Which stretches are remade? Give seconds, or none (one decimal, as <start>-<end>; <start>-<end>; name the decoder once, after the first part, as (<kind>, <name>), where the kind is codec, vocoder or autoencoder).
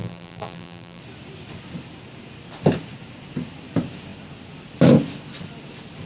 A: 0.0-1.0 (vocoder, BigVGAN v2)